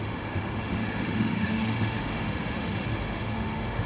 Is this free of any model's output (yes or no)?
no